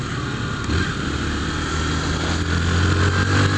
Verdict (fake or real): real